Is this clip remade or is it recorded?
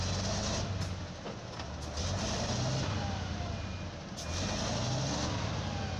recorded